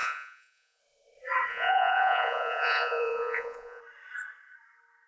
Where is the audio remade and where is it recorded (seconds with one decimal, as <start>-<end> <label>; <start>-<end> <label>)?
0.0-0.8 remade; 0.8-1.5 recorded; 1.5-3.8 remade; 3.8-5.1 recorded

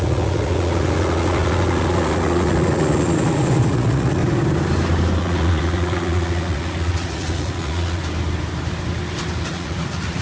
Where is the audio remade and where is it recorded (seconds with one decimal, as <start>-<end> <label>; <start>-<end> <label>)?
0.0-4.2 remade; 4.2-5.2 recorded; 5.2-8.0 remade; 8.0-9.5 recorded; 9.5-10.2 remade

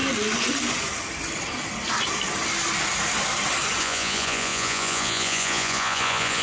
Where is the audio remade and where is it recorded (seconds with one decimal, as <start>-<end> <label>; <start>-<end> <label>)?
0.0-3.8 recorded; 3.8-6.4 remade

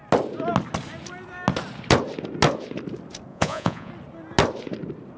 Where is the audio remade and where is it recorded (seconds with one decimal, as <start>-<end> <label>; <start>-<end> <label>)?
0.0-3.3 recorded; 3.3-3.9 remade; 3.9-5.2 recorded

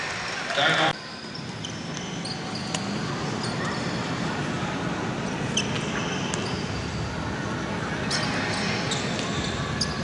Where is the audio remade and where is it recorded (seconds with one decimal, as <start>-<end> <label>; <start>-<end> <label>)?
0.0-10.0 recorded